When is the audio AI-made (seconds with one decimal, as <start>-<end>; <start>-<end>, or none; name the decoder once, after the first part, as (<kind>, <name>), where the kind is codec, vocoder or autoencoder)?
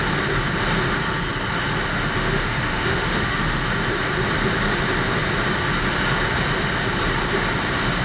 1.9-3.6 (autoencoder, DAC-VAE)